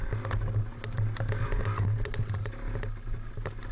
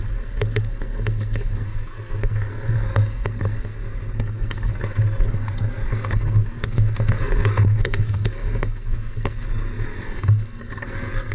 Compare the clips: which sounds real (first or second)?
first